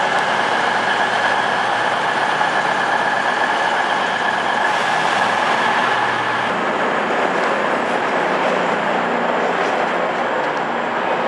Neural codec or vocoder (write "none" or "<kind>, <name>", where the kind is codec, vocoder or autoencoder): none